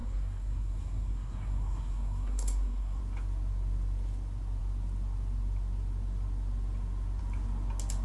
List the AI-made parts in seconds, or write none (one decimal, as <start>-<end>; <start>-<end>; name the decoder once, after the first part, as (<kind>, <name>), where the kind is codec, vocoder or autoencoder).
0.0-3.0 (codec, SNAC)